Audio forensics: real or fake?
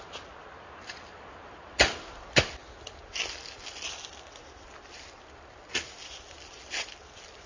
real